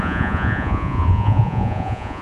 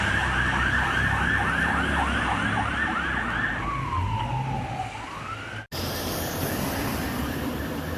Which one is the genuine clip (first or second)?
second